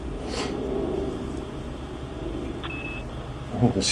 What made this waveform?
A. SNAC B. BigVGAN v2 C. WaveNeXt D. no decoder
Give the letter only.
D